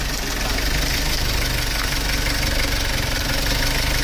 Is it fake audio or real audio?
real